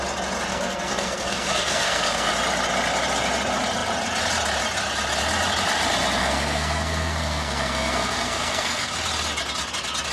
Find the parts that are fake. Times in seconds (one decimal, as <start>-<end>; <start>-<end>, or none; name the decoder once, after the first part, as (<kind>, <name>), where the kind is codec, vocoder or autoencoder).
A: 0.5-2.3 (codec, SNAC); 6.2-8.9